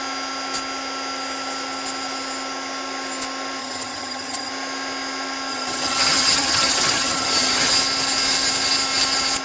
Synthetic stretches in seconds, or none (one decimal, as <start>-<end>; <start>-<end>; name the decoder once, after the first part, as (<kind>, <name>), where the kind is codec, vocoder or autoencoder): 3.6-4.5 (vocoder, HiFi-GAN); 5.5-7.7